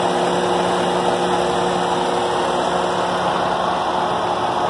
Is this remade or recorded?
recorded